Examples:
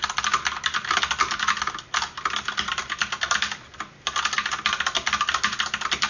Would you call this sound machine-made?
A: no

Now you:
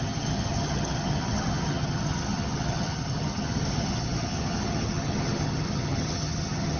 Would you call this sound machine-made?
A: yes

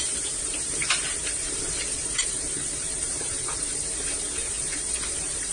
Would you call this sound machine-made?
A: yes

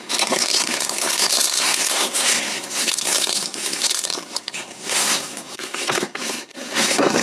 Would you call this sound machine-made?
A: yes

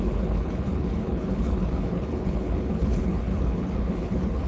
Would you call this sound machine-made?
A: yes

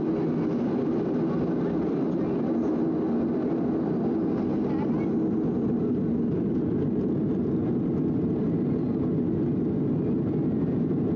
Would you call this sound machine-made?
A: no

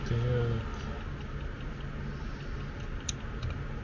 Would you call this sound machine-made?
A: no